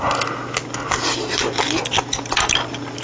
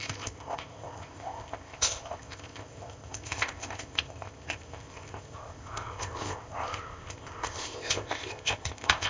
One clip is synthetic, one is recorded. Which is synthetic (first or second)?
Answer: second